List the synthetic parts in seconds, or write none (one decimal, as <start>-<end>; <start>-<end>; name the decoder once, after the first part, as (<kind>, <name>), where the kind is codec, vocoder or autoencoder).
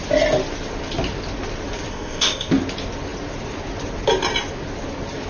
1.9-2.5 (codec, ZipCodec)